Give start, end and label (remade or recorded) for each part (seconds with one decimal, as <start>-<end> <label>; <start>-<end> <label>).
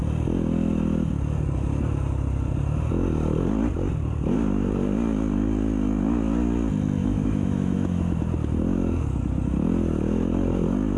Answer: 0.0-7.0 recorded; 7.0-8.2 remade; 8.2-11.0 recorded